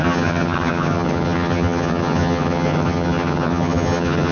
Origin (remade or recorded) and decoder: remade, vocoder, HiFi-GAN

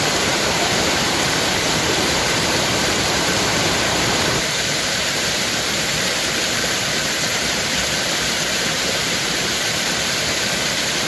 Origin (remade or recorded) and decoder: remade, vocoder, BigVGAN v2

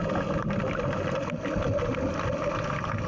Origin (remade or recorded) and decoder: recorded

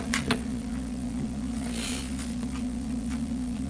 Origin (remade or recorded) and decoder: remade, vocoder, Vocos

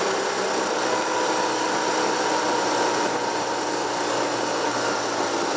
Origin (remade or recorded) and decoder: recorded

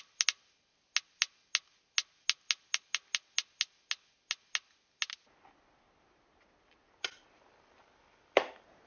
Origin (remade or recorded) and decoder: recorded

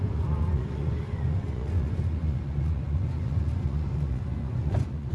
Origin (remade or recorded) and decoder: remade, vocoder, Vocos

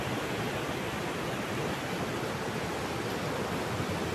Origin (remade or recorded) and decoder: recorded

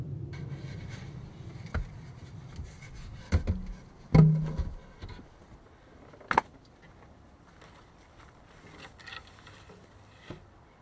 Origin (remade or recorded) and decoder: recorded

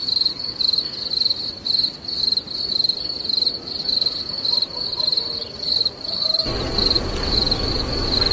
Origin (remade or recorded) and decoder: recorded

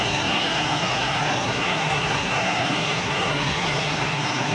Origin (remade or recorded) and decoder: remade, codec, SNAC